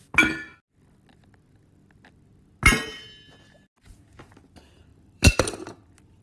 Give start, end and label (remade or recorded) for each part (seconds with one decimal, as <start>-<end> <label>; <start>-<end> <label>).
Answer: 0.0-4.9 recorded; 4.9-5.6 remade; 5.6-6.2 recorded

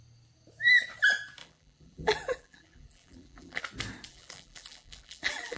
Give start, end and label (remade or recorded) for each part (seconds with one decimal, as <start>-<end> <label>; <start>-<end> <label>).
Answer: 0.0-1.4 recorded; 1.4-3.6 remade; 3.6-4.1 recorded; 4.1-5.6 remade

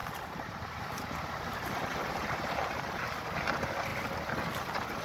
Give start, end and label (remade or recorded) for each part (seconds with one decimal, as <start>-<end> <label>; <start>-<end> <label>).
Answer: 0.0-3.0 remade; 3.0-5.0 recorded

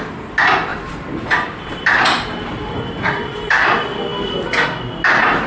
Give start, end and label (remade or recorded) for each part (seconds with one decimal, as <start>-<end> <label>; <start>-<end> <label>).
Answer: 0.0-0.7 recorded; 0.7-3.5 remade; 3.5-5.5 recorded

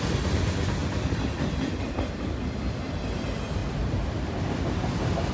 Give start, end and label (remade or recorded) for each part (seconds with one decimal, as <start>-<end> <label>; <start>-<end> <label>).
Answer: 0.0-3.6 recorded; 3.6-4.4 remade; 4.4-5.3 recorded

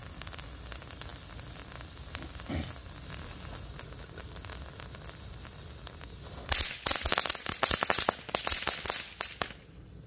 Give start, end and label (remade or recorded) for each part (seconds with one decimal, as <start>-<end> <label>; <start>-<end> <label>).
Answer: 0.0-10.1 recorded

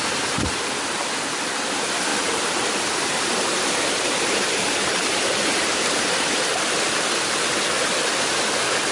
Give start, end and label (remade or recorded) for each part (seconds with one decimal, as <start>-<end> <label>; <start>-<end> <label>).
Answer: 0.0-2.1 recorded; 2.1-7.0 remade; 7.0-8.9 recorded